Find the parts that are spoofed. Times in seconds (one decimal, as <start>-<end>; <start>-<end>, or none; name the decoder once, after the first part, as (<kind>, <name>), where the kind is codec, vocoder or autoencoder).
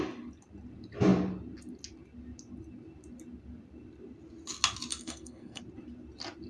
4.9-5.6 (codec, SNAC)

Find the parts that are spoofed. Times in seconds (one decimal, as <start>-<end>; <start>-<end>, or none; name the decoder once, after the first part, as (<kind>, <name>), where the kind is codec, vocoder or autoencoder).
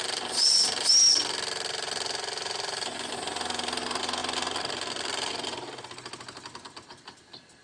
none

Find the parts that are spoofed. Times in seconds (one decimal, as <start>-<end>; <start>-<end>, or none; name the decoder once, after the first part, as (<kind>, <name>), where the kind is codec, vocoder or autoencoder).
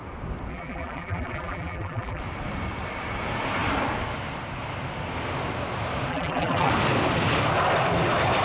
0.5-2.2 (vocoder, BigVGAN v2); 6.1-6.7